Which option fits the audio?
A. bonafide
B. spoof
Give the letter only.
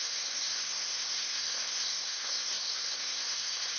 B